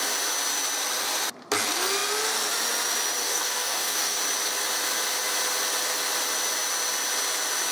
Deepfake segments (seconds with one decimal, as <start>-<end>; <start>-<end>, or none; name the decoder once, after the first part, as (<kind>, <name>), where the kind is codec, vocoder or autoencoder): 3.2-4.2 (codec, DAC)